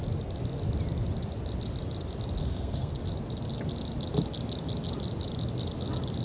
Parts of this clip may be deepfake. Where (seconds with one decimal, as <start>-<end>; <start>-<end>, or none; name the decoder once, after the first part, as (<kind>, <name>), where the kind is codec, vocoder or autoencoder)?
2.4-2.9 (codec, SNAC)